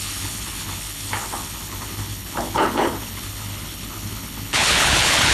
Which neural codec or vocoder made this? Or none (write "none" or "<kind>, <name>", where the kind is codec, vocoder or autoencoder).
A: codec, HILCodec